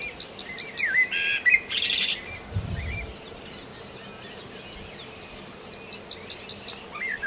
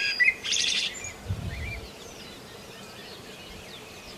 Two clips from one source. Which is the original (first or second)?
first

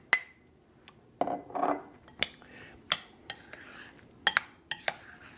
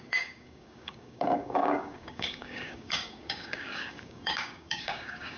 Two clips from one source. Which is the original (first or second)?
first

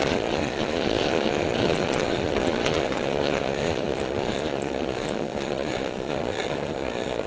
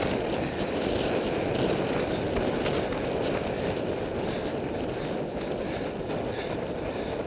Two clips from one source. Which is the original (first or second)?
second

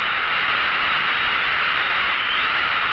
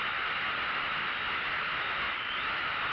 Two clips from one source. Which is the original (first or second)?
second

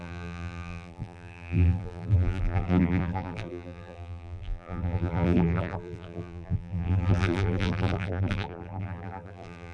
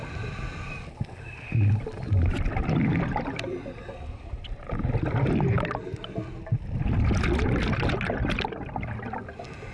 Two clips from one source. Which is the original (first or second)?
second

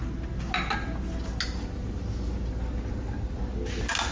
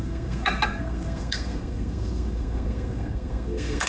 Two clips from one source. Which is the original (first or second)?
first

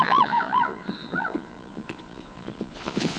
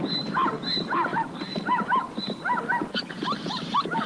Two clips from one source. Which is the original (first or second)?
second